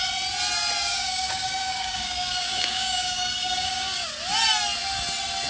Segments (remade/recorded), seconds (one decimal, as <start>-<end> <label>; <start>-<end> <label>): 0.0-0.8 recorded; 0.8-4.1 remade; 4.1-5.5 recorded